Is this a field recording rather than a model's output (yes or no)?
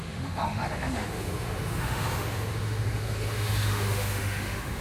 no